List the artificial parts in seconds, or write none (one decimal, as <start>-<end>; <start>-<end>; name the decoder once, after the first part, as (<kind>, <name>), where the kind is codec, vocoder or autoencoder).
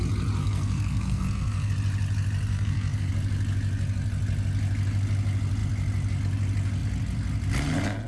0.4-1.7 (codec, SNAC); 2.5-3.1